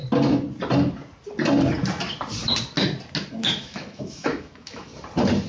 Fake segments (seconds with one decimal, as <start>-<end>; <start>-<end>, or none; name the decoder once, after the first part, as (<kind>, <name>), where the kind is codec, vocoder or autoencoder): 3.3-4.9 (autoencoder, DAC-VAE)